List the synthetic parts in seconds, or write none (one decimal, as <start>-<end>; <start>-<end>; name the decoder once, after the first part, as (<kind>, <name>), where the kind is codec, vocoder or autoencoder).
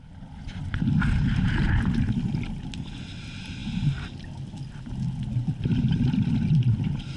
none